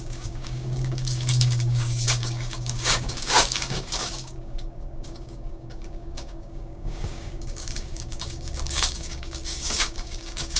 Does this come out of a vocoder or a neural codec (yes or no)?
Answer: yes